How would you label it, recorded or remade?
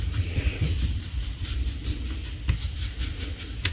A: recorded